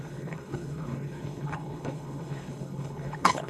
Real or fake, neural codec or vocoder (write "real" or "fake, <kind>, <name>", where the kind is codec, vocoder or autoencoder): fake, codec, HILCodec